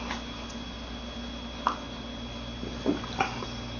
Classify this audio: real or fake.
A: real